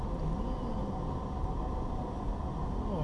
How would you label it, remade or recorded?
recorded